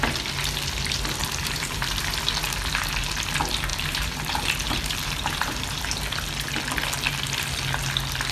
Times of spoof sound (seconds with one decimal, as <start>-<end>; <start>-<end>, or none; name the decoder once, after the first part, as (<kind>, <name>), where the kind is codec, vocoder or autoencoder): 1.2-2.1 (vocoder, BigVGAN v2); 3.7-6.3